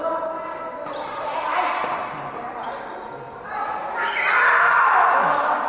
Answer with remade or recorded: recorded